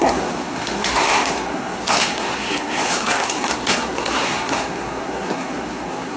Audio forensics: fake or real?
fake